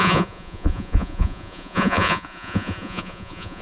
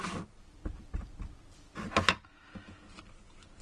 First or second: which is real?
second